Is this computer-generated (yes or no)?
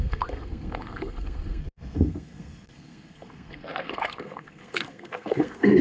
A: yes